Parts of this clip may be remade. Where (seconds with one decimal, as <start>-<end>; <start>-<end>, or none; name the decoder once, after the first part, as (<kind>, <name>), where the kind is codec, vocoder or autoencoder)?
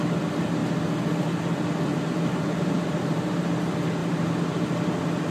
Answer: 1.9-3.5 (vocoder, BigVGAN v2); 4.0-4.8